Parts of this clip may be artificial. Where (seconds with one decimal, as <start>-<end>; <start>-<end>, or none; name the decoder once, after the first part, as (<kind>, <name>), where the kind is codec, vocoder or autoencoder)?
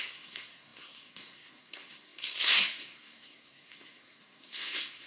0.0-5.1 (codec, SNAC)